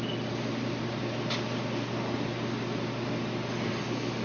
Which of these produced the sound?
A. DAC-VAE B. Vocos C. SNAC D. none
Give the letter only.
D